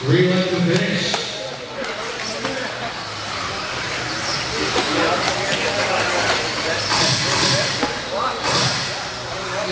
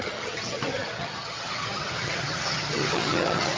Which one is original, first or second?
first